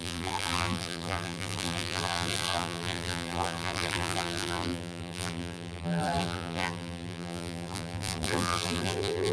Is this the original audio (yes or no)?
no